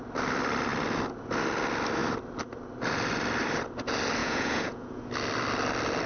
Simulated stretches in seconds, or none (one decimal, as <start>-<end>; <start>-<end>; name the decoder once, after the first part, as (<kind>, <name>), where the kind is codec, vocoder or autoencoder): 4.2-5.0 (vocoder, Vocos)